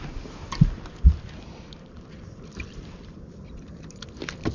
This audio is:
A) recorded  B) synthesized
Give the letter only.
A